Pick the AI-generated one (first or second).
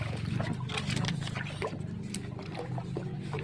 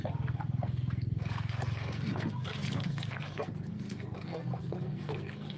second